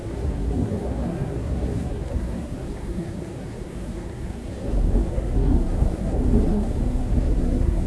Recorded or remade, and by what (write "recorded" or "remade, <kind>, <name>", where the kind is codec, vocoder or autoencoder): remade, codec, SNAC